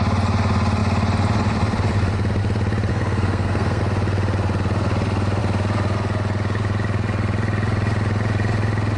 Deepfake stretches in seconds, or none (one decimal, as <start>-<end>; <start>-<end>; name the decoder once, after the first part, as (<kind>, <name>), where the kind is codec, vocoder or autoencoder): 2.9-3.8 (codec, SNAC)